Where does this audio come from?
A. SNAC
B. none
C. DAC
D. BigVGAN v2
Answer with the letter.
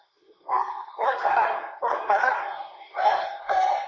A